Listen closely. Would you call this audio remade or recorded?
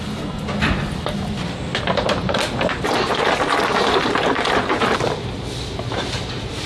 recorded